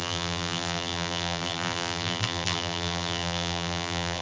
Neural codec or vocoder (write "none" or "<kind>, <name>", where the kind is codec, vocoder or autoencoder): vocoder, BigVGAN v2